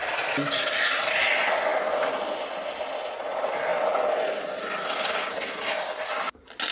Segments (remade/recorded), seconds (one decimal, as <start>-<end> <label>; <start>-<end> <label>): 0.0-6.7 recorded